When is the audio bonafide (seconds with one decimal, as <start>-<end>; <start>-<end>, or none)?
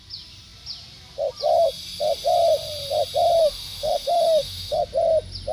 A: 0.0-3.4; 4.8-5.5